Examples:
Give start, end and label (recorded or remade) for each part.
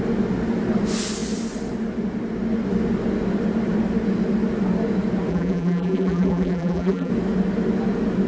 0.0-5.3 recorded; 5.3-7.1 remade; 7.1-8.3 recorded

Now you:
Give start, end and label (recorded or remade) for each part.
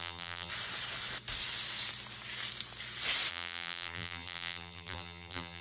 0.0-0.5 remade; 0.5-3.3 recorded; 3.3-5.6 remade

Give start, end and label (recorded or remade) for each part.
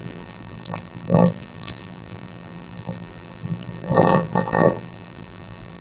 0.0-5.8 remade